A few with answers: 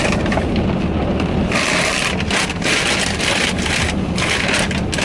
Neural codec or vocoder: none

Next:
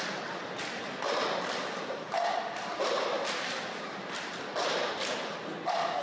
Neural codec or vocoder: none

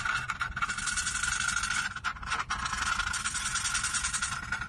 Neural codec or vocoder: none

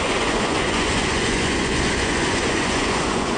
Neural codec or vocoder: vocoder, Vocos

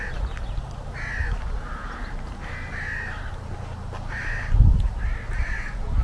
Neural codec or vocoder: none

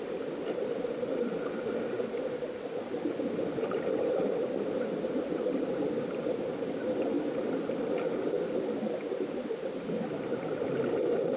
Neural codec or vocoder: none